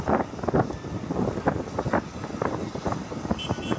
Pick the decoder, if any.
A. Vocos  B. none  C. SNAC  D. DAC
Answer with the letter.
B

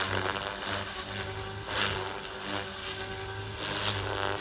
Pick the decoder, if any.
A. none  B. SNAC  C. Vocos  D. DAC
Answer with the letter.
A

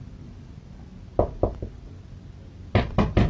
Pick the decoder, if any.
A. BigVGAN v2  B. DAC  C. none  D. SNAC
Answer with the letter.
C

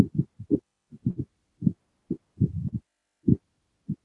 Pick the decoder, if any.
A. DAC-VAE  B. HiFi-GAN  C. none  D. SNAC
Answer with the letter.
C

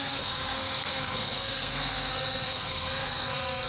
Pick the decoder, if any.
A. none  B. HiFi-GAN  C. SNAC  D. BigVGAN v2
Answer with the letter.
C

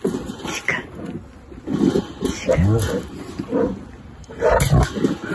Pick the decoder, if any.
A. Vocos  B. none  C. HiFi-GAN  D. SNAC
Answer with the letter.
B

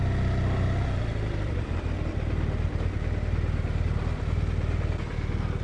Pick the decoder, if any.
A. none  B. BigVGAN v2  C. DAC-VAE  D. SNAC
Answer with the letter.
A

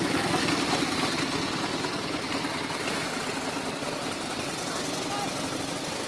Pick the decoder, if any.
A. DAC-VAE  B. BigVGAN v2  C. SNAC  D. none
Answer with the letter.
D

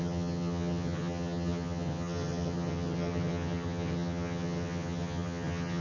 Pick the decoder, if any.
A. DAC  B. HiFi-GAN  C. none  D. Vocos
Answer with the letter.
B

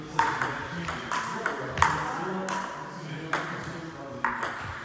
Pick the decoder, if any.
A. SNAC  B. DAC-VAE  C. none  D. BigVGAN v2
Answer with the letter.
C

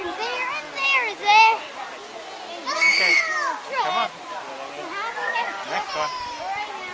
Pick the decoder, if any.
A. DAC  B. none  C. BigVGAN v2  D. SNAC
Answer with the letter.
B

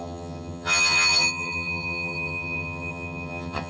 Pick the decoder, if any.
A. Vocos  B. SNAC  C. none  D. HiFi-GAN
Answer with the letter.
D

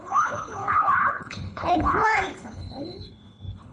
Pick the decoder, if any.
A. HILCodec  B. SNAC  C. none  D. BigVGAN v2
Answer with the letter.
A